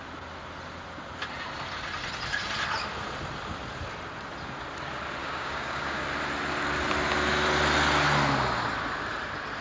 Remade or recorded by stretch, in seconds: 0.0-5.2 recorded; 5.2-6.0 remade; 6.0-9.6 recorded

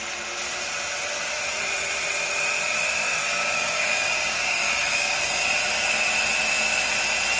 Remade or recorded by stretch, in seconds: 0.0-3.2 recorded; 3.2-5.4 remade; 5.4-7.4 recorded

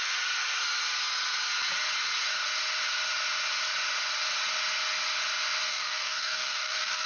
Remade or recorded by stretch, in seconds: 0.0-5.7 recorded; 5.7-7.1 remade

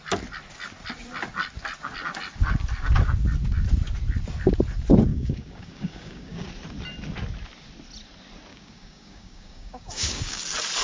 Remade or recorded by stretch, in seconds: 0.0-5.1 recorded; 5.1-6.5 remade; 6.5-8.5 recorded; 8.5-10.4 remade; 10.4-10.8 recorded

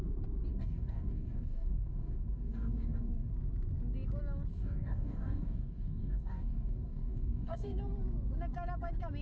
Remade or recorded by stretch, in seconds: 0.0-0.5 recorded; 0.5-3.3 remade; 3.3-4.5 recorded; 4.5-7.8 remade; 7.8-9.2 recorded

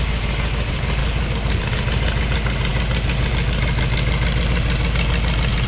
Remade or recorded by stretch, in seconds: 0.0-1.0 recorded; 1.0-1.6 remade; 1.6-5.7 recorded

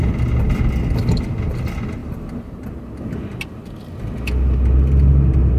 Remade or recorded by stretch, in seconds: 0.0-5.6 recorded